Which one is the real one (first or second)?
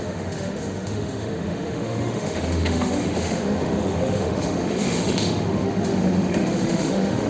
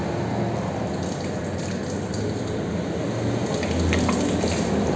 second